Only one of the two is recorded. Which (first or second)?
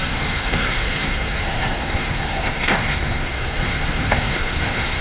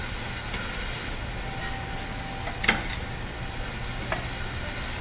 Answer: second